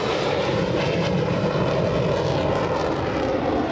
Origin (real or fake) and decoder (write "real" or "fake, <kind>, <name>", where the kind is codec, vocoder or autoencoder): real